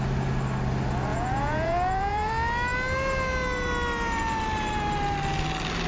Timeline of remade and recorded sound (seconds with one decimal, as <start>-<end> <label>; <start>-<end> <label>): 0.0-1.1 recorded; 1.1-2.3 remade; 2.3-5.9 recorded